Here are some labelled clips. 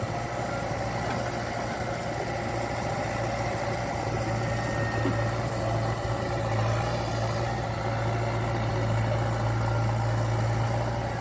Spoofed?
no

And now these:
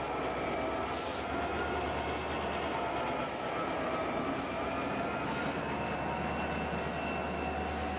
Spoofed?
no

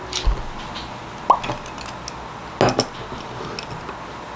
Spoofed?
no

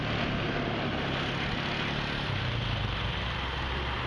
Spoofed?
no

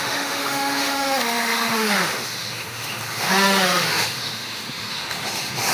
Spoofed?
yes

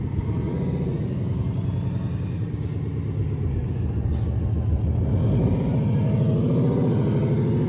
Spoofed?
no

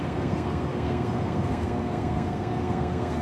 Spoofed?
yes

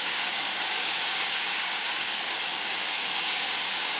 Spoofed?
yes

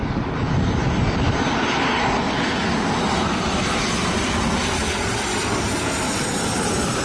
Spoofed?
no